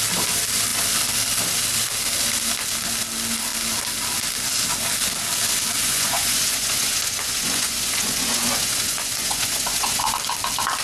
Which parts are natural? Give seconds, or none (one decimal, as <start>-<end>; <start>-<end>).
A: 0.0-5.8; 10.1-10.8